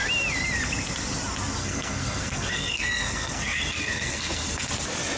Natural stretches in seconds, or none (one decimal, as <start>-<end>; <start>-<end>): 0.0-1.6; 4.7-5.2